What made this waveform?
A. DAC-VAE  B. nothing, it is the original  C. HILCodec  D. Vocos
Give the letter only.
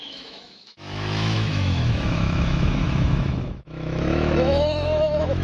A